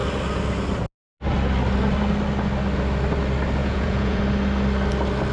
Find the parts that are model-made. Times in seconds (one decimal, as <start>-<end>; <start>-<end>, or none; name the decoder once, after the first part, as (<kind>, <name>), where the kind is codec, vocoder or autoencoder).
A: 3.6-4.2 (vocoder, Vocos)